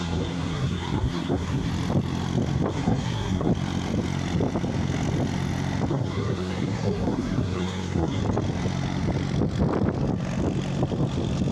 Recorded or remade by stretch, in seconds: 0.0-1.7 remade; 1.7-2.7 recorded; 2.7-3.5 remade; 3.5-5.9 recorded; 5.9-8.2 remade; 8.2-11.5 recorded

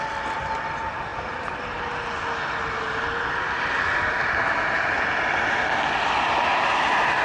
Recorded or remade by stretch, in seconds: 0.0-7.2 recorded